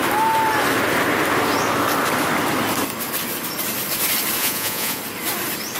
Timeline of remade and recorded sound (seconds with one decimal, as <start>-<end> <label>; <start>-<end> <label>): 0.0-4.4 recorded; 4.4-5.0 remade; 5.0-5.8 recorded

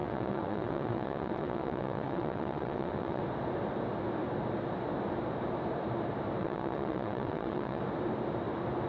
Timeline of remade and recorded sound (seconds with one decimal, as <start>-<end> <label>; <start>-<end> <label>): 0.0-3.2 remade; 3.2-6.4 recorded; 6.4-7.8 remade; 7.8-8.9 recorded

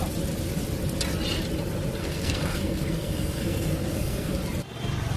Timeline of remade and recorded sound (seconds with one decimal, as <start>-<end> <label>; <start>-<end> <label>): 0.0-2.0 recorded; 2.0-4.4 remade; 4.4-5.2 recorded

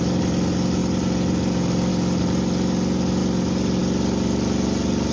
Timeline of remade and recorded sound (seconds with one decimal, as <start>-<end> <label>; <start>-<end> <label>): 0.0-5.1 recorded

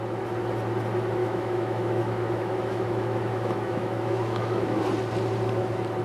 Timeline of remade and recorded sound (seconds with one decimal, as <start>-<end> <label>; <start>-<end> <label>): 0.0-1.2 recorded; 1.2-4.8 remade; 4.8-6.0 recorded